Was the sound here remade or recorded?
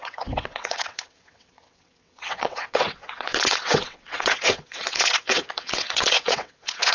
remade